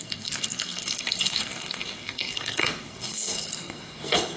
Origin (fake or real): fake